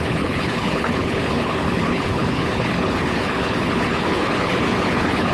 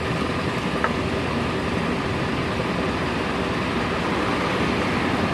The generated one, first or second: first